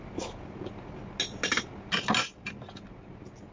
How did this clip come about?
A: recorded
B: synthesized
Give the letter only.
A